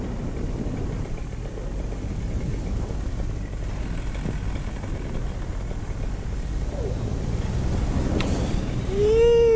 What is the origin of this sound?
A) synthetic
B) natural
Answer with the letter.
B